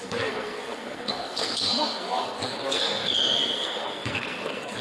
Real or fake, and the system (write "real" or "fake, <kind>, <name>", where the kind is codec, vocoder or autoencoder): fake, codec, SNAC